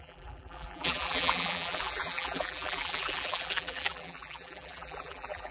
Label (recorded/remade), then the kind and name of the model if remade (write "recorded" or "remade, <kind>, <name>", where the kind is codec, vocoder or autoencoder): remade, vocoder, BigVGAN v2